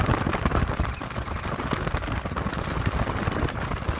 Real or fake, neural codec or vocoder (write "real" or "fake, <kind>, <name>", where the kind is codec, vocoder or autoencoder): real